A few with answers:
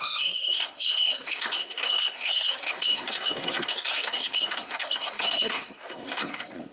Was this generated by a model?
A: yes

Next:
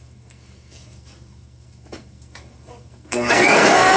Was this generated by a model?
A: yes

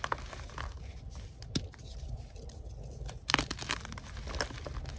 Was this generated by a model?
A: no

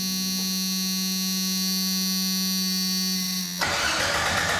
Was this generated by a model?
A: no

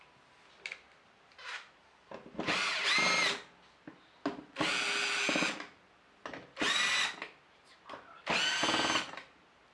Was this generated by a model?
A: no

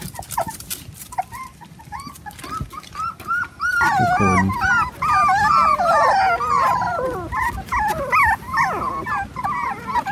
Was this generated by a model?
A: no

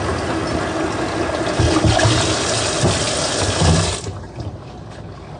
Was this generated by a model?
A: no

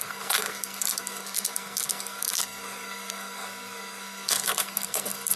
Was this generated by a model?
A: yes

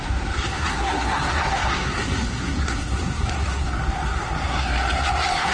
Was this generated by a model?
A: yes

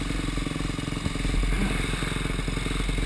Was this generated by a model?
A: no